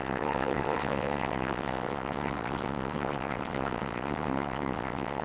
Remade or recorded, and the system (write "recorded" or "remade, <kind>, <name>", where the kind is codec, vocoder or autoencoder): remade, vocoder, WaveNeXt